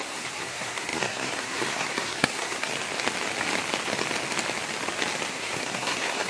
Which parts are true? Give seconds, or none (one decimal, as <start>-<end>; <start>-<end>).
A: 2.7-5.3